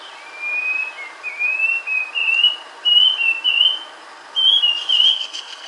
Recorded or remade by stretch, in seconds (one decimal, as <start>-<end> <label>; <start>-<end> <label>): 0.0-5.1 recorded; 5.1-5.7 remade